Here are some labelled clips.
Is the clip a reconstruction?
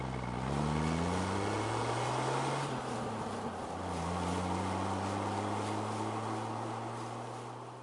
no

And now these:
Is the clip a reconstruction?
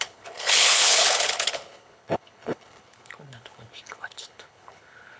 yes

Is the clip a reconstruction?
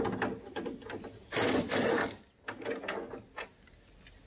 no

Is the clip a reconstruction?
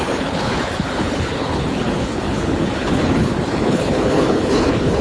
yes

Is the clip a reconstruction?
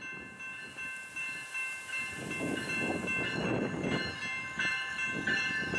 no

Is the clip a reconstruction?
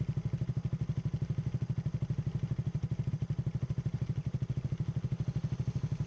no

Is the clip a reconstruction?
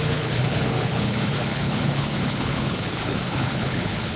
yes